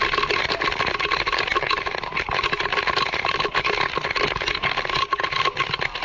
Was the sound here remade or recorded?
recorded